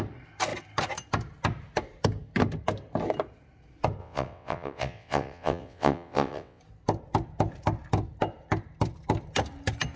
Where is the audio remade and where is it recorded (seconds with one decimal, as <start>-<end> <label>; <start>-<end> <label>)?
0.0-4.0 recorded; 4.0-6.6 remade; 6.6-10.0 recorded